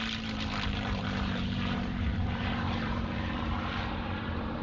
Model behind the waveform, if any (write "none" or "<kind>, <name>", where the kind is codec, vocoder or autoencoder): vocoder, BigVGAN v2